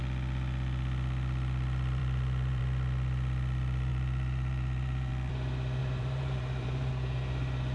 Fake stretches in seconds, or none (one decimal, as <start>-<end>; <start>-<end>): 2.0-2.6; 3.9-5.1; 5.8-6.9